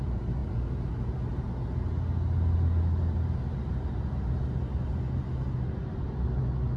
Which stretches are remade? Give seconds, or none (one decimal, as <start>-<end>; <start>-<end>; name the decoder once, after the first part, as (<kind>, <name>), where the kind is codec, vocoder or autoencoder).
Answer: none